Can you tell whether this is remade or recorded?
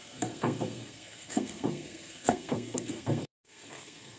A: remade